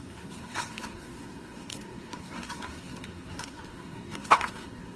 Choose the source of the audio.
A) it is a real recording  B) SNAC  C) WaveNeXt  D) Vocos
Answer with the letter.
B